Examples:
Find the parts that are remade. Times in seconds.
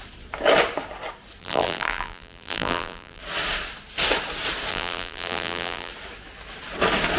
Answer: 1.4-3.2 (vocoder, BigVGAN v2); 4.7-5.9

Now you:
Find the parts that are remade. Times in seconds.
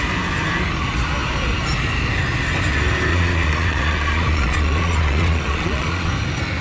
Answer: 3.1-6.1 (vocoder, Vocos)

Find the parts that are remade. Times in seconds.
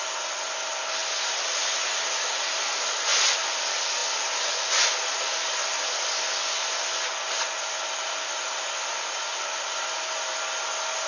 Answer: none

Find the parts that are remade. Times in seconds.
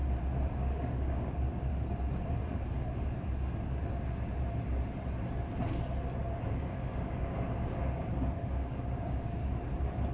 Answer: 0.6-1.7 (codec, DAC); 6.4-9.4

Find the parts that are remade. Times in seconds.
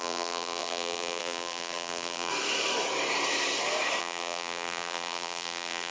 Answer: 0.0-2.3 (vocoder, BigVGAN v2); 4.0-5.9